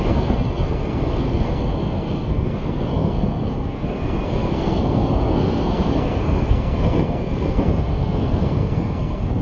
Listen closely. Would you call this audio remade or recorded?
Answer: remade